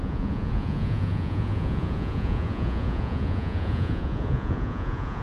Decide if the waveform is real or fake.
fake